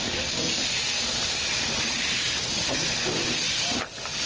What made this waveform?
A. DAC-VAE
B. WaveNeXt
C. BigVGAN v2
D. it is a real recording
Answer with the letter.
D